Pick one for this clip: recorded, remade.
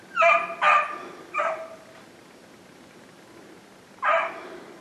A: recorded